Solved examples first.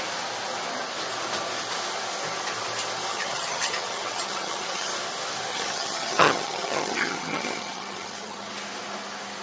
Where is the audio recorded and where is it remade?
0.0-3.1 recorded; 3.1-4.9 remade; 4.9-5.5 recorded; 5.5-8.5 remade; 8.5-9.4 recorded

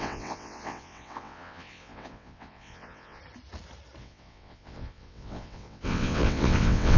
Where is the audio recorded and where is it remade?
0.0-3.2 remade; 3.2-4.0 recorded; 4.0-7.0 remade

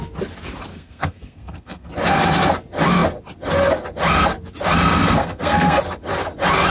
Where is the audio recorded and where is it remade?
0.0-0.7 recorded; 0.7-1.9 remade; 1.9-5.2 recorded; 5.2-5.8 remade; 5.8-6.7 recorded

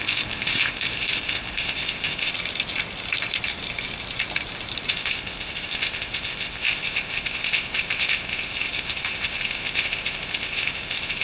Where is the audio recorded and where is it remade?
0.0-2.3 remade; 2.3-4.9 recorded; 4.9-11.2 remade